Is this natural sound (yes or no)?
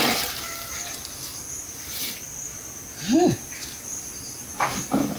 no